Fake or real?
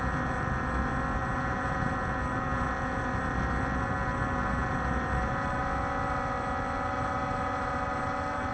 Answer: real